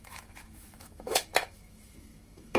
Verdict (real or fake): fake